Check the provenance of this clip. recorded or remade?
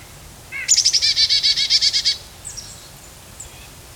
recorded